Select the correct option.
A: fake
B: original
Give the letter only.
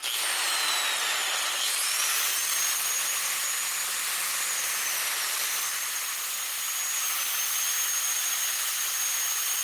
B